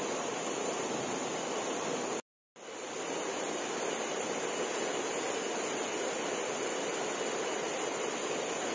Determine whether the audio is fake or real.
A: real